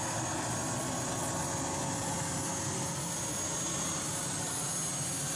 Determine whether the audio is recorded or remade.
recorded